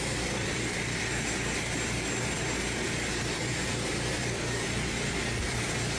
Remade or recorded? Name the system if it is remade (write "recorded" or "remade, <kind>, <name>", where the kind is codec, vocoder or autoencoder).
remade, vocoder, BigVGAN v2